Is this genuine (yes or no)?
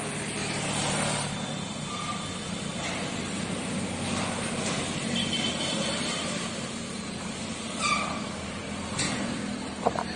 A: no